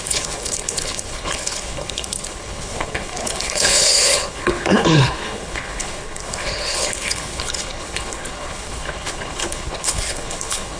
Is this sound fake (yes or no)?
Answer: yes